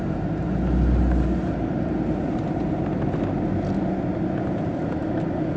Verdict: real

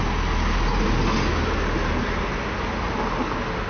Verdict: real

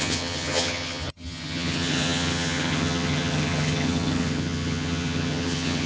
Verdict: fake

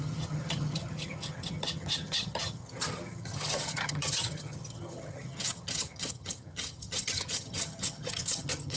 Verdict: fake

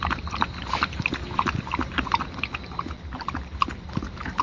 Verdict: real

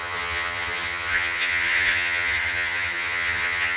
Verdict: fake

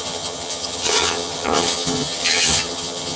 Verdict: fake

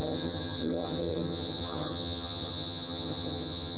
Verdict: fake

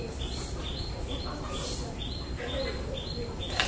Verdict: real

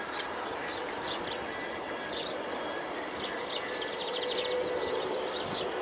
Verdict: real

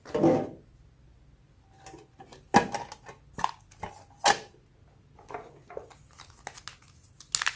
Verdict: real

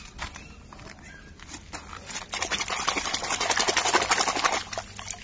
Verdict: real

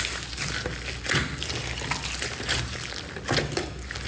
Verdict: real